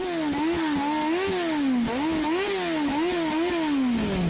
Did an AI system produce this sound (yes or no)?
no